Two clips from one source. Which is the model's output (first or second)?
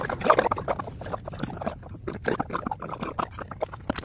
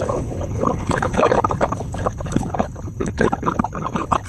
second